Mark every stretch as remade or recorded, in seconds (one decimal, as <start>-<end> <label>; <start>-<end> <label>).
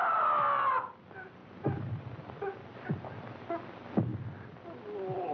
0.0-1.4 recorded; 1.4-2.2 remade; 2.2-5.3 recorded